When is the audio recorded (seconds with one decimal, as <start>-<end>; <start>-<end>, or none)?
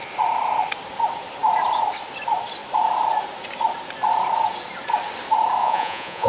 0.0-5.6